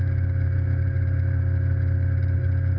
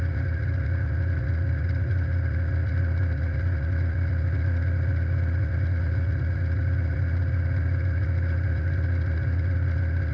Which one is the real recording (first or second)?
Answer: first